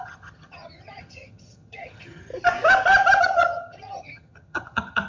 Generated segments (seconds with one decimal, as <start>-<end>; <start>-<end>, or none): 0.0-2.3; 3.2-5.1